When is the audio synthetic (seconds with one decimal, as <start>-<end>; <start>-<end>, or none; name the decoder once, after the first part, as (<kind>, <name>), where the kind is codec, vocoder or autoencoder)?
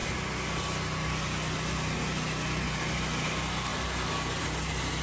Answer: none